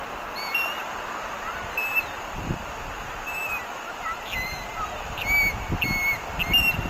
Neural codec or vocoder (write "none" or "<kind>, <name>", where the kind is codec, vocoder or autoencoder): none